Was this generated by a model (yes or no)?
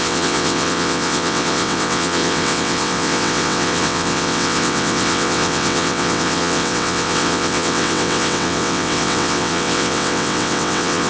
yes